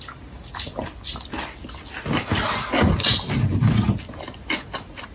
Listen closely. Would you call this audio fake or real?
real